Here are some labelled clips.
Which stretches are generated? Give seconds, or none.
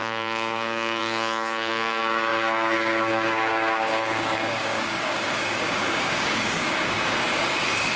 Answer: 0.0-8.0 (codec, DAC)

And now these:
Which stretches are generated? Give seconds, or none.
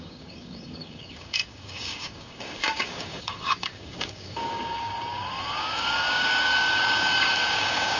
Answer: 0.0-8.0 (codec, DAC)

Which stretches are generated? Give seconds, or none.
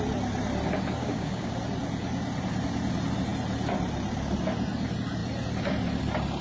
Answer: 1.0-1.5 (codec, DAC)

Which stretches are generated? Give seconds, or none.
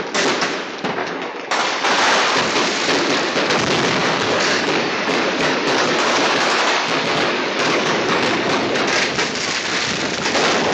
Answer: 1.0-1.9 (codec, DAC); 4.0-8.8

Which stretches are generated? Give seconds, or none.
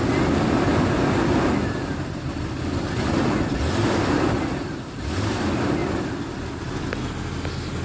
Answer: none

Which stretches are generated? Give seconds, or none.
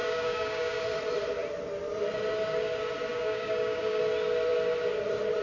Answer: 0.0-0.8 (codec, DAC); 3.1-4.0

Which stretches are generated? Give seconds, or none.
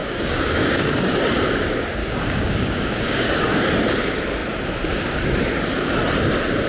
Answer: 0.0-1.2 (codec, DAC); 2.0-3.7